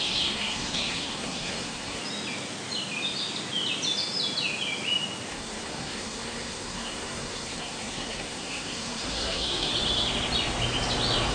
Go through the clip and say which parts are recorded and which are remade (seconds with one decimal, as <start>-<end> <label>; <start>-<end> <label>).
0.0-2.0 remade; 2.0-5.3 recorded; 5.3-9.7 remade; 9.7-11.3 recorded